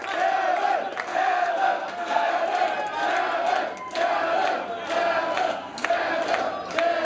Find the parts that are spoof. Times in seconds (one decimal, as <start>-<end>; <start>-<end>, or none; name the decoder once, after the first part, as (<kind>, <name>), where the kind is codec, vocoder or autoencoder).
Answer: 1.1-2.3 (codec, SNAC); 5.4-5.9